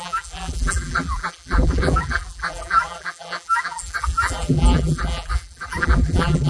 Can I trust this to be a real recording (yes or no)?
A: no